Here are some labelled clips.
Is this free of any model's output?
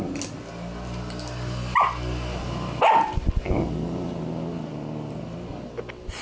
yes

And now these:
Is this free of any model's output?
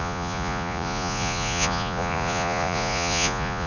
no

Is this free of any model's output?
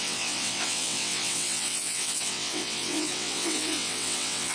no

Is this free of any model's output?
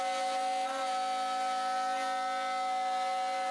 yes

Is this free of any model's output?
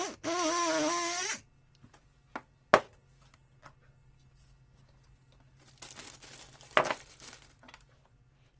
yes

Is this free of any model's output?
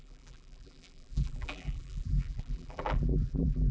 no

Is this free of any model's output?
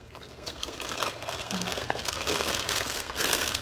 no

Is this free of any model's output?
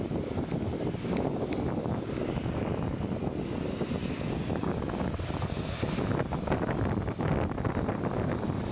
yes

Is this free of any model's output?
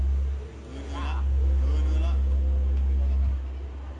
yes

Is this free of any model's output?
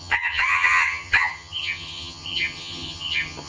no